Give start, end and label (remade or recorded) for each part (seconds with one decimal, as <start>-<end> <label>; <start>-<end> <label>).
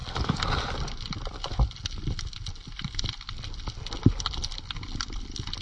0.0-5.6 recorded